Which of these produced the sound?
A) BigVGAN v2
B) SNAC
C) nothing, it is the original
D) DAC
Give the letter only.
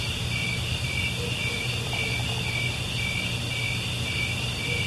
C